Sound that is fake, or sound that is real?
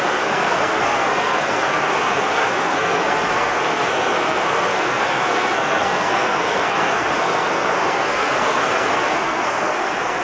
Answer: fake